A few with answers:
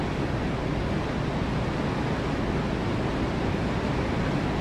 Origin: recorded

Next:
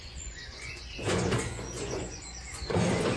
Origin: remade